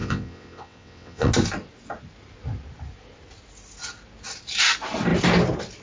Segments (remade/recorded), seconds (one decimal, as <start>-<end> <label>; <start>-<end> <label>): 0.0-1.3 remade; 1.3-5.8 recorded